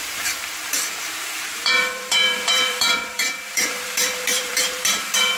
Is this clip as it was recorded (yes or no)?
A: no